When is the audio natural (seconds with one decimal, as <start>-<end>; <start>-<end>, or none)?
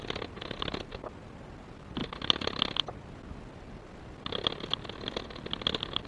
0.0-6.1